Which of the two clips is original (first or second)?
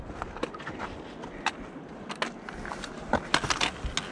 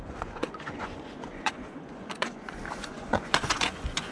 first